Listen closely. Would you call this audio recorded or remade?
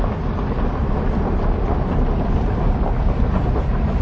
recorded